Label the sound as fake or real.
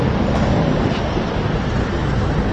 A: fake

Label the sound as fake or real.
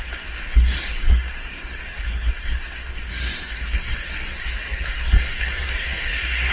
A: fake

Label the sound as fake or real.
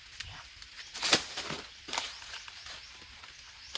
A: real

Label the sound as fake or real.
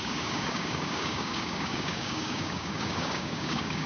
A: fake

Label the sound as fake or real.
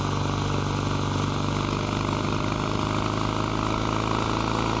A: real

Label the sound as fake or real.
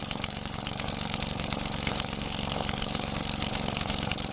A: fake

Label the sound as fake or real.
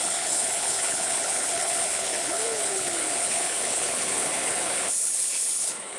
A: fake